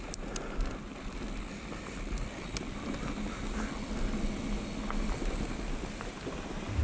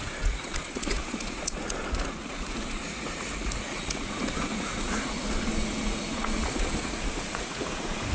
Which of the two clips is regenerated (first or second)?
second